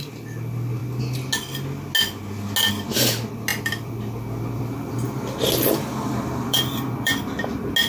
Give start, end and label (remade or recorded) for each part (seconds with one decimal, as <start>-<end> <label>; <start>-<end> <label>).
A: 0.0-3.5 recorded; 3.5-7.1 remade; 7.1-7.9 recorded